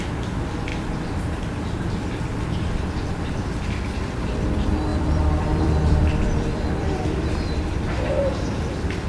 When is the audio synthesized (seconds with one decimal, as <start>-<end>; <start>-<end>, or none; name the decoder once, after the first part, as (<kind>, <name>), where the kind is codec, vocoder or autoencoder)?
0.7-2.0 (vocoder, BigVGAN v2); 4.9-9.1